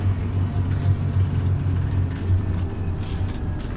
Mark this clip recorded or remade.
recorded